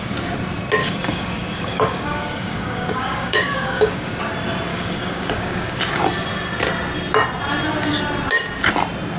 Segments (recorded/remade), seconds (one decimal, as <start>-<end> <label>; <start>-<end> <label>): 0.0-0.8 recorded; 0.8-4.2 remade; 4.2-4.7 recorded; 4.7-5.8 remade; 5.8-9.2 recorded

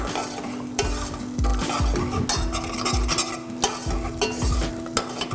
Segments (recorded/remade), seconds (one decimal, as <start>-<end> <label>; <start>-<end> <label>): 0.0-5.3 recorded

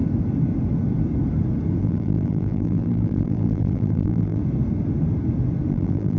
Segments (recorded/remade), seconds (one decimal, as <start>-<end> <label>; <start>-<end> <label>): 0.0-1.8 recorded; 1.8-4.4 remade; 4.4-5.7 recorded; 5.7-6.2 remade

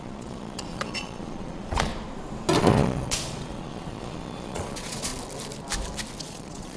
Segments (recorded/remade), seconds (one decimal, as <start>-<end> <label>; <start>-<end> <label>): 0.0-1.9 remade; 1.9-2.6 recorded; 2.6-5.1 remade; 5.1-6.2 recorded; 6.2-6.8 remade

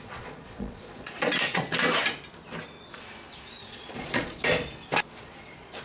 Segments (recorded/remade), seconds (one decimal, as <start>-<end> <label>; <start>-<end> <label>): 0.0-1.8 remade; 1.8-3.6 recorded; 3.6-4.4 remade; 4.4-5.2 recorded; 5.2-5.8 remade

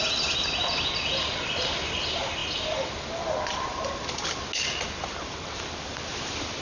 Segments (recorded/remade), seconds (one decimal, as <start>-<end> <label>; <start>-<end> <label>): 0.0-6.6 recorded

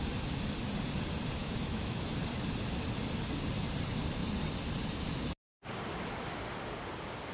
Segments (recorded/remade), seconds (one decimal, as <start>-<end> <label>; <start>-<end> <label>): 0.0-1.4 recorded; 1.4-2.0 remade; 2.0-7.3 recorded